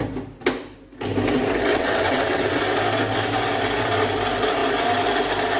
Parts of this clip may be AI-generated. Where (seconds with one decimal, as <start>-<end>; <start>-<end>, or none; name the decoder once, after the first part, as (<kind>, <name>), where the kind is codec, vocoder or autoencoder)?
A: 1.7-2.6 (vocoder, WaveNeXt)